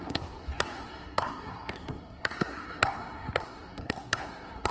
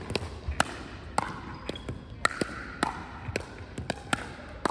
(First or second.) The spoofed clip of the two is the first